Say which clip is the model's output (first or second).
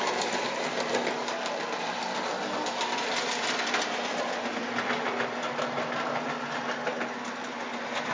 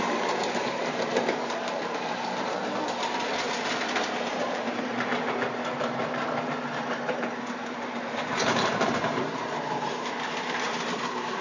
second